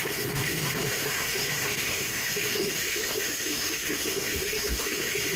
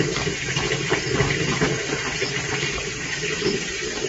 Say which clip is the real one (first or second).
second